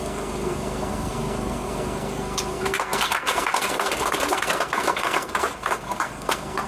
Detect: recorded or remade remade